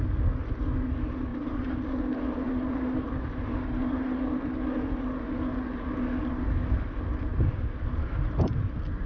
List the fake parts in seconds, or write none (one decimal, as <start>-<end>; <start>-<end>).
none